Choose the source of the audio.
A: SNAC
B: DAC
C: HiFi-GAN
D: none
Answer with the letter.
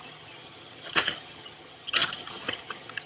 C